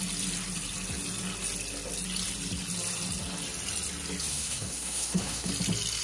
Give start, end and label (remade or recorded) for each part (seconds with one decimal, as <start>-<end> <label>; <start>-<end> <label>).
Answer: 0.0-4.3 recorded; 4.3-5.5 remade; 5.5-6.0 recorded